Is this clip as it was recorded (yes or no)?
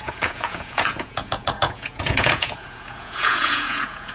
no